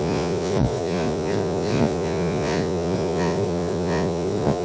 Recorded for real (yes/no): no